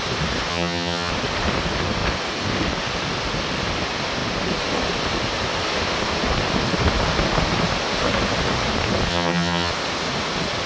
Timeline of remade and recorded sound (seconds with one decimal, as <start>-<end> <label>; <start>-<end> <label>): 0.0-0.5 recorded; 0.5-1.1 remade; 1.1-9.1 recorded; 9.1-9.7 remade; 9.7-10.7 recorded

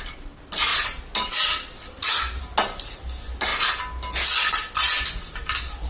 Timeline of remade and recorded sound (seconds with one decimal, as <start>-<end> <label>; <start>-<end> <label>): 0.0-5.9 recorded

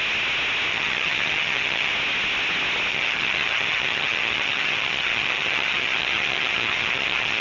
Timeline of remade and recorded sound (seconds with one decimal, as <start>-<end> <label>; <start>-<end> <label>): 0.0-0.7 recorded; 0.7-1.9 remade; 1.9-2.9 recorded; 2.9-7.4 remade

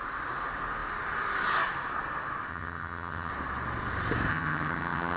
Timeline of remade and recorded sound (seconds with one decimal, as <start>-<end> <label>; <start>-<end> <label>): 0.0-2.5 recorded; 2.5-3.3 remade; 3.3-4.3 recorded; 4.3-5.2 remade

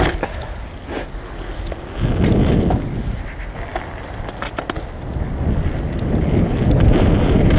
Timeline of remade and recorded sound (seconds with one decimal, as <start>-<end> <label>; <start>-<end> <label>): 0.0-7.6 recorded

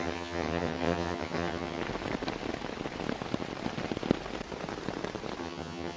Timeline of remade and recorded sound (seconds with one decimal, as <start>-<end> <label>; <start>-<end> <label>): 0.0-1.8 remade; 1.8-5.4 recorded; 5.4-6.0 remade

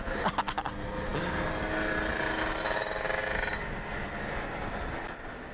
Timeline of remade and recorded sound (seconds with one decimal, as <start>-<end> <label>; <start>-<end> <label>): 0.0-5.5 recorded